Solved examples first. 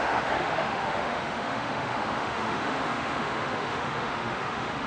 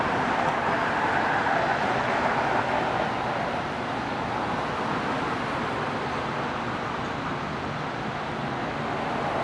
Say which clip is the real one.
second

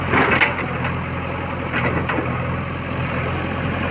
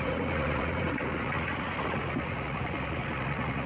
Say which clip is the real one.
first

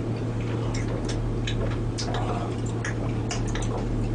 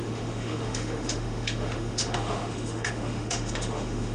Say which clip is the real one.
first